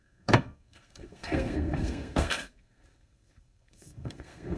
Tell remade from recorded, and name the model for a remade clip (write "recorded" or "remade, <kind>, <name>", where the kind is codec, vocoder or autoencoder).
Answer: remade, codec, SNAC